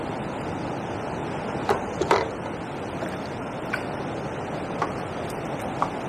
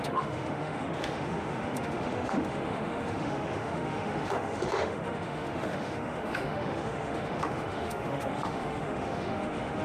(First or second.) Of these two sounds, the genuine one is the first